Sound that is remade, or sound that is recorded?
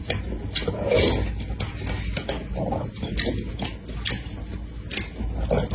recorded